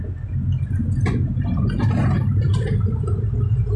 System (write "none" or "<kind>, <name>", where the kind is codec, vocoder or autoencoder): none